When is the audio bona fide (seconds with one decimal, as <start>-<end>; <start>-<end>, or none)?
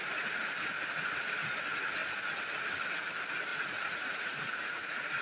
0.0-3.5